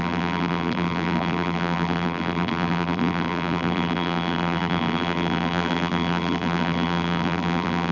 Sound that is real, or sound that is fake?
fake